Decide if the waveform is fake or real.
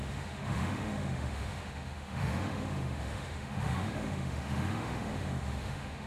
fake